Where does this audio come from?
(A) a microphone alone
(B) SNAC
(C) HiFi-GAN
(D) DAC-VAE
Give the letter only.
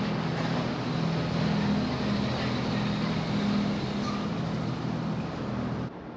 A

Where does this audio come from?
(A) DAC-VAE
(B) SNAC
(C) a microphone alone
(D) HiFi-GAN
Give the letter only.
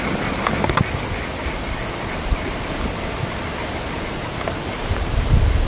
C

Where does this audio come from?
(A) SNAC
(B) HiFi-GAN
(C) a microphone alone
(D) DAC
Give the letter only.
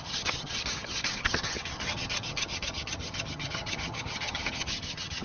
B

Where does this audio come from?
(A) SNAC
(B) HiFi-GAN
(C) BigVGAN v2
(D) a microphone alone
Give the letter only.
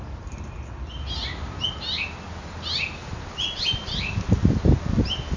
D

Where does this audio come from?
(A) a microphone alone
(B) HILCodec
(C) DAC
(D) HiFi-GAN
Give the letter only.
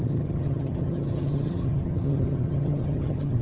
D